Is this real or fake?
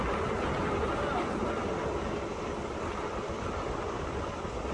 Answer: real